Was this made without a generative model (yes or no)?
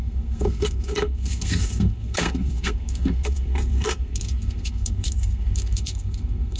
no